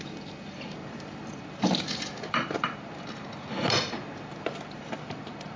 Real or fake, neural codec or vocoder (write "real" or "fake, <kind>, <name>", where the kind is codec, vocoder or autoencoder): fake, vocoder, BigVGAN v2